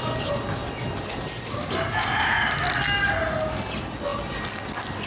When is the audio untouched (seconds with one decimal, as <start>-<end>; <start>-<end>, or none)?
0.0-5.1